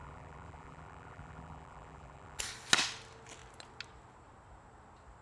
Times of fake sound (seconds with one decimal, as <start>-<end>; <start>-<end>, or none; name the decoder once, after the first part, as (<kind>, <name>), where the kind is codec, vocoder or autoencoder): 0.0-2.4 (vocoder, BigVGAN v2)